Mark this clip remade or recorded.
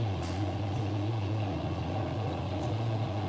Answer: remade